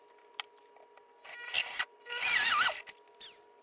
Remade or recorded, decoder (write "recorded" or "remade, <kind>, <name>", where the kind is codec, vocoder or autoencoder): recorded